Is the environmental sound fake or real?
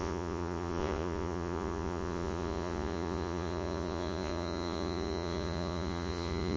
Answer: fake